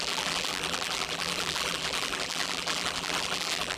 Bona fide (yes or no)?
no